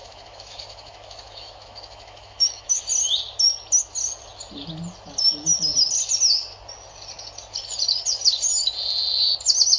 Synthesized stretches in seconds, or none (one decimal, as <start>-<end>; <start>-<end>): 0.0-2.8